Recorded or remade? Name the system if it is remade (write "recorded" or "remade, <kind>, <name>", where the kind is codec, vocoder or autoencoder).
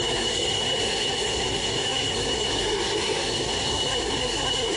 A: remade, codec, SNAC